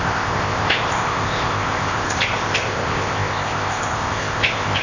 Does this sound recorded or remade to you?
remade